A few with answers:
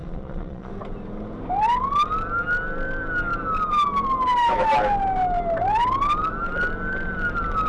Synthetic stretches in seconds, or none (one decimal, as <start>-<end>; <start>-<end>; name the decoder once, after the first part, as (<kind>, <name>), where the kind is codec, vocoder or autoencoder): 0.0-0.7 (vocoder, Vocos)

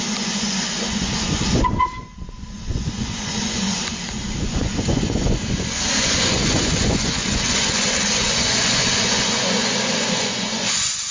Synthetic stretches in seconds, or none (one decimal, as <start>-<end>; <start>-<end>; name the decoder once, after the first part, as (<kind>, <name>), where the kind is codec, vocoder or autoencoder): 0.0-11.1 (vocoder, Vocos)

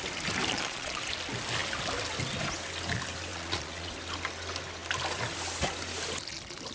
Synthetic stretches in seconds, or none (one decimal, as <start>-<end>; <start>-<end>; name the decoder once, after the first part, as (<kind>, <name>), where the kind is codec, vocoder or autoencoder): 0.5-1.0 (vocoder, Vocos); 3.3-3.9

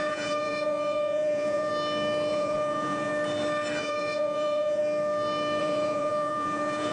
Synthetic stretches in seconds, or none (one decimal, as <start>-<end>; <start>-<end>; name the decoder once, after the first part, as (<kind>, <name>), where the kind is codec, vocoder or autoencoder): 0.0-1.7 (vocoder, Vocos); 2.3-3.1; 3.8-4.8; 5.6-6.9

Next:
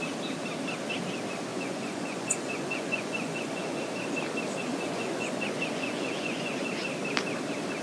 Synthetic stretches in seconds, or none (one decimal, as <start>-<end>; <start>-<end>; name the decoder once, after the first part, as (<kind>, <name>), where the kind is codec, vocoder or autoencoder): 1.5-3.8 (vocoder, Vocos); 4.6-6.7

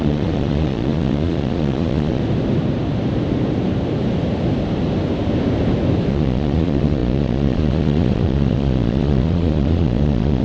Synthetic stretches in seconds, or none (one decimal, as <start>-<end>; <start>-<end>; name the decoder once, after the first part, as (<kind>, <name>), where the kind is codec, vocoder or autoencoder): 0.0-2.2 (vocoder, Vocos); 6.1-10.4